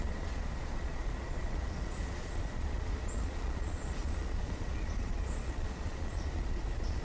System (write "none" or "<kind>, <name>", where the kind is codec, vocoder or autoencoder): vocoder, Vocos